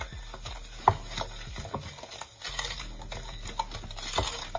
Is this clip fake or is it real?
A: real